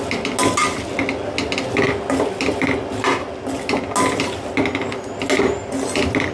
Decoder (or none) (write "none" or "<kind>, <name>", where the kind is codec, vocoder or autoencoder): none